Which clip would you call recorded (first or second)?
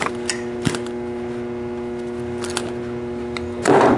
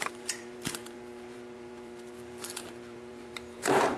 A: first